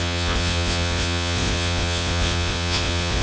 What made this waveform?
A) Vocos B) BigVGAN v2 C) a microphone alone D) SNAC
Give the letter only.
A